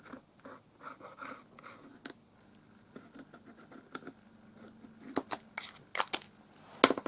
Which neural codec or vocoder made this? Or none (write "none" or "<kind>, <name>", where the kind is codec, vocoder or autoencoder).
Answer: none